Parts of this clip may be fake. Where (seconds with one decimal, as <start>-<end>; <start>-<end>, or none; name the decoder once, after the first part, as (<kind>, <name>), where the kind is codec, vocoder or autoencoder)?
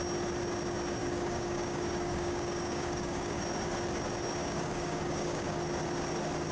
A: 1.0-3.4 (codec, DAC); 4.4-5.6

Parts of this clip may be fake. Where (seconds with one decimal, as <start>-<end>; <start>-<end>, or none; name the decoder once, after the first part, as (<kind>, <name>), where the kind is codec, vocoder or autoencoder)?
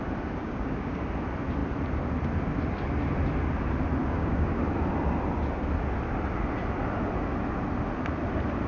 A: 0.4-1.0 (codec, DAC); 4.0-4.6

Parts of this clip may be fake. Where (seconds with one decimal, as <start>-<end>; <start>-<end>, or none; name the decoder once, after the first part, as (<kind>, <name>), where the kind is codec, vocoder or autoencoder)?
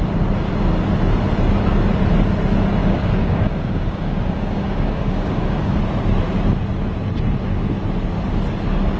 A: 2.8-5.8 (codec, DAC)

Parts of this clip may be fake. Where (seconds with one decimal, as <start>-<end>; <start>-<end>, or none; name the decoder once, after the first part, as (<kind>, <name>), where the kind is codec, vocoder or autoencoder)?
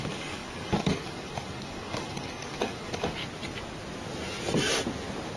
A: 0.0-3.2 (codec, DAC)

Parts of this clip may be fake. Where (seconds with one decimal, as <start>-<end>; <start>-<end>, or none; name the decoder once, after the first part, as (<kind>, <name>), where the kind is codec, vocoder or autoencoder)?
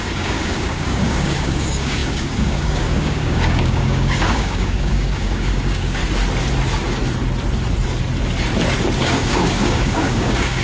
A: 0.0-6.0 (codec, DAC); 9.0-10.6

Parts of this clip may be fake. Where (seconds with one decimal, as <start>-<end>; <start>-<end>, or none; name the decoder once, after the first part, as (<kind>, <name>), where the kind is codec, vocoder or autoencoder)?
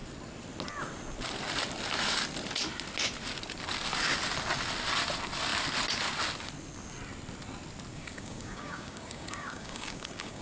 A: 7.9-10.4 (codec, DAC)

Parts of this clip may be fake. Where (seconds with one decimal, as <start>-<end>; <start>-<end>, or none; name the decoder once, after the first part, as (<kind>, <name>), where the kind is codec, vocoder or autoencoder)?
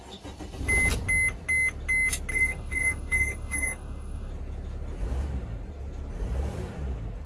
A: 2.3-4.3 (codec, DAC)